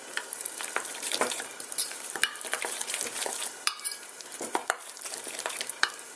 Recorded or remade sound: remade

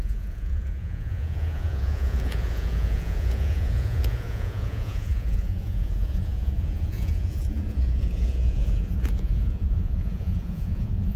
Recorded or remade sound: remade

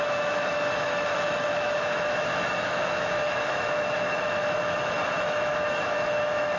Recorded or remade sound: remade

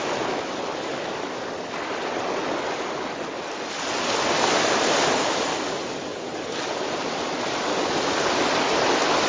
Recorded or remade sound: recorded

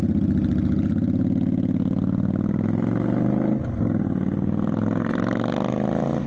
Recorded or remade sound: recorded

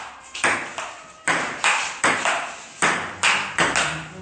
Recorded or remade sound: recorded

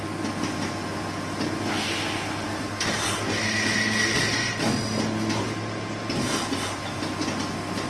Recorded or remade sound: recorded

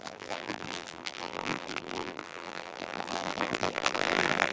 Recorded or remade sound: remade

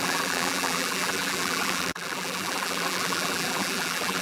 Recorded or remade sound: remade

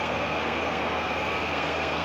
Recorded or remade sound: remade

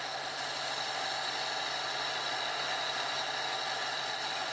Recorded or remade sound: recorded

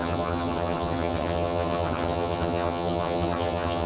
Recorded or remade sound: remade